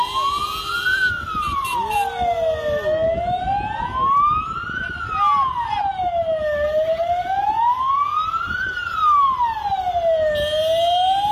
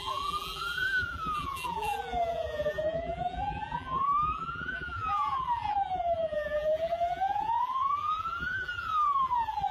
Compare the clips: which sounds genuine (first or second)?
first